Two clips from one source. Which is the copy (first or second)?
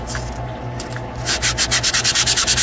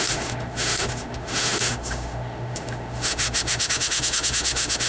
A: second